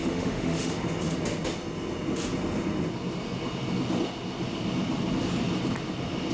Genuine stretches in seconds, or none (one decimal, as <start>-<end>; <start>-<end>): 0.7-6.3